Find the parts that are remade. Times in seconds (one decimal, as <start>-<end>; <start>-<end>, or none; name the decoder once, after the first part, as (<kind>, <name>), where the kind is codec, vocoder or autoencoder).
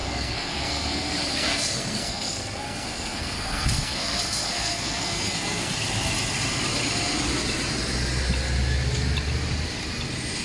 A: 0.0-5.7 (codec, SNAC)